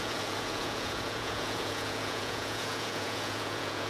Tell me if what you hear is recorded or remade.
remade